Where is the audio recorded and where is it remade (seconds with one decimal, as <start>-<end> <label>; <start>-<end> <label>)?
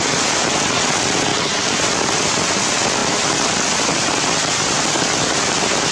0.0-5.9 recorded